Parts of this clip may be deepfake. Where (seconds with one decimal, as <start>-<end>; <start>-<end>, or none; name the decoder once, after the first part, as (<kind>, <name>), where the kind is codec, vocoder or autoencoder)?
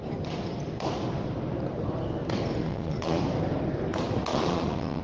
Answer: 2.6-3.2 (vocoder, Vocos); 4.3-5.0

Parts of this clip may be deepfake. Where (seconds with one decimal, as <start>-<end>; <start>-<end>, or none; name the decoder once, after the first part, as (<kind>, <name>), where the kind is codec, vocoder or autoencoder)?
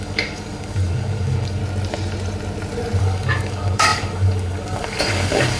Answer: 0.0-1.6 (codec, DAC); 3.0-5.6